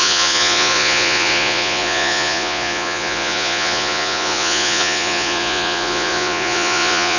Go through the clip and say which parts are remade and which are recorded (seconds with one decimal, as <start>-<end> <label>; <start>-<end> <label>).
0.0-7.2 remade